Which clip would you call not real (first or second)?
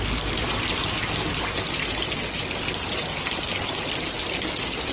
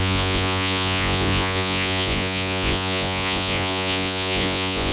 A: second